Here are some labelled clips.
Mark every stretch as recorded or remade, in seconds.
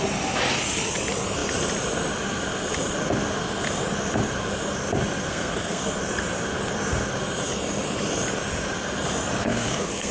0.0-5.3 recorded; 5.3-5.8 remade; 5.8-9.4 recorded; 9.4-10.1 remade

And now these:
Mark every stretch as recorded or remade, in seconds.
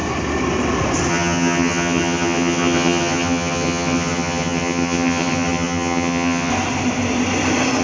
0.0-1.1 recorded; 1.1-6.5 remade; 6.5-7.8 recorded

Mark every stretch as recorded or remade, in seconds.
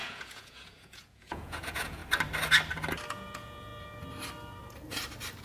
0.0-2.0 remade; 2.0-3.1 recorded; 3.1-3.7 remade; 3.7-5.4 recorded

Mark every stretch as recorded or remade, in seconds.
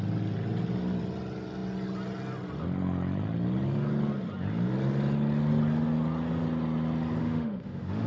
0.0-7.2 recorded; 7.2-8.1 remade